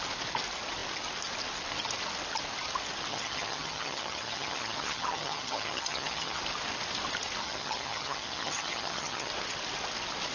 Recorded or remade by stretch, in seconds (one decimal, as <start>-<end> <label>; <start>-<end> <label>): 0.0-3.1 recorded; 3.1-6.4 remade; 6.4-7.4 recorded; 7.4-9.3 remade; 9.3-10.3 recorded